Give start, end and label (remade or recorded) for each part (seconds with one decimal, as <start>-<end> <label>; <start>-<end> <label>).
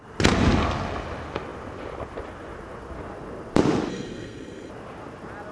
0.0-3.9 recorded; 3.9-4.7 remade; 4.7-5.5 recorded